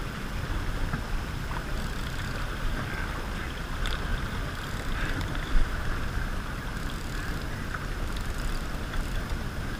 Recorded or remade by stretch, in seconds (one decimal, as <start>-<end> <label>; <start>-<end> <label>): 0.0-4.1 recorded; 4.1-8.7 remade; 8.7-9.8 recorded